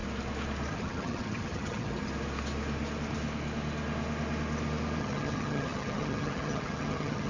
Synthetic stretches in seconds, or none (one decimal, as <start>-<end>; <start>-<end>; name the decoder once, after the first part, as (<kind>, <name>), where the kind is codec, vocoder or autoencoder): 0.7-2.1 (vocoder, HiFi-GAN); 5.0-7.3